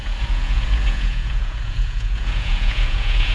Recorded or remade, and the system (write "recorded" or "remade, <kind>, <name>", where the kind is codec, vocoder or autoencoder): remade, vocoder, Vocos